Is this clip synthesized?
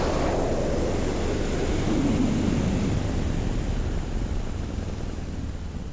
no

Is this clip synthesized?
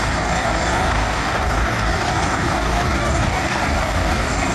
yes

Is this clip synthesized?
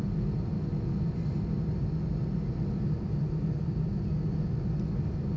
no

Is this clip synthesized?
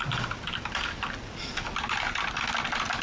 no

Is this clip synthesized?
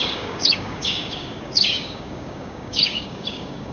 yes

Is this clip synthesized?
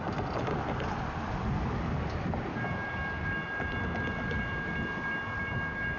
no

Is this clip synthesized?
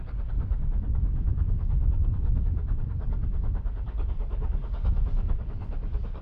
yes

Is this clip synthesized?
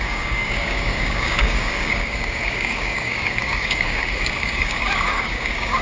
yes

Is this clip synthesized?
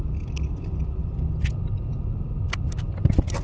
no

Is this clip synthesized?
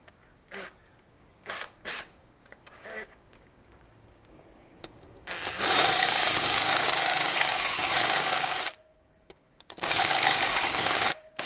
yes